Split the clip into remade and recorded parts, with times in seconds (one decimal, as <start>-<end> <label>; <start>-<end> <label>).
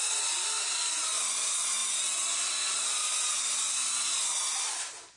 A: 0.0-1.8 recorded; 1.8-2.3 remade; 2.3-5.2 recorded